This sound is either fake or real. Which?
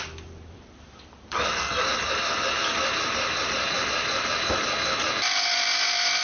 fake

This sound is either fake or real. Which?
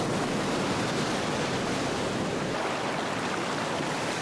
real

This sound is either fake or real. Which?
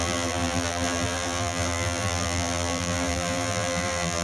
fake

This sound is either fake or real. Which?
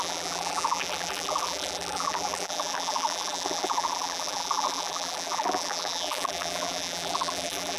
fake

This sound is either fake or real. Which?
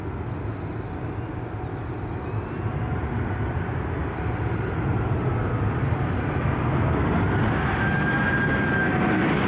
real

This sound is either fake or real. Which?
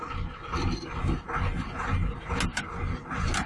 real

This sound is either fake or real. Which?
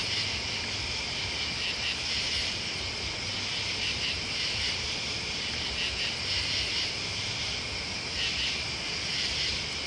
fake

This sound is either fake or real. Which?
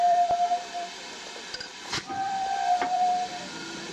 fake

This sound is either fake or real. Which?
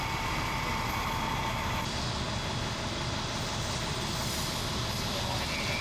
real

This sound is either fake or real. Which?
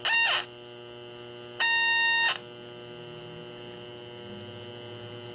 real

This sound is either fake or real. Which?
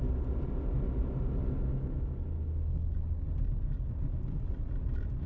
real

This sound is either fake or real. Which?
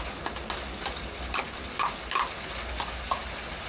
real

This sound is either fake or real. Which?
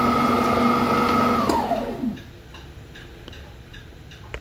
real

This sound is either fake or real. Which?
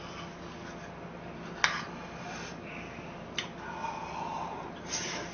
real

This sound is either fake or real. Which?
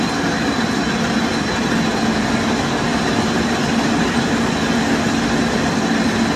real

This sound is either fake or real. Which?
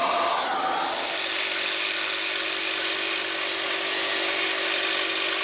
real